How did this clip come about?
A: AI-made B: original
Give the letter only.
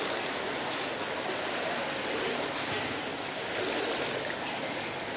B